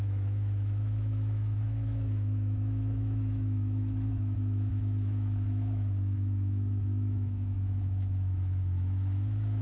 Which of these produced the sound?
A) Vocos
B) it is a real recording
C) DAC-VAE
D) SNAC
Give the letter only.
C